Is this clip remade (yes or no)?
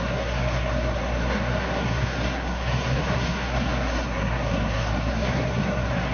yes